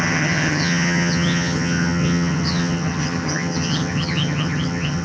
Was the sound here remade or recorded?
remade